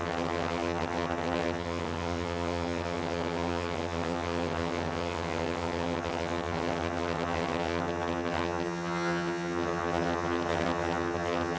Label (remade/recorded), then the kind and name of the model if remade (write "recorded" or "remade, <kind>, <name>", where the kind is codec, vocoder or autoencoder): remade, vocoder, HiFi-GAN